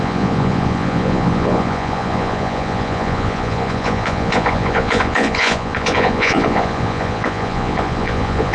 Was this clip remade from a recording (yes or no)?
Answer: yes